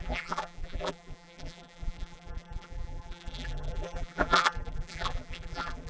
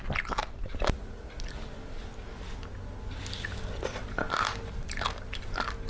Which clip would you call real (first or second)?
second